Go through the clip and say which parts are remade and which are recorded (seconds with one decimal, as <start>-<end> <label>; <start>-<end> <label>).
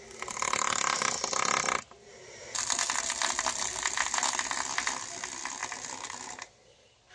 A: 0.0-7.1 recorded